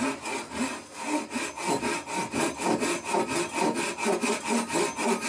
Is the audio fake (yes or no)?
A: no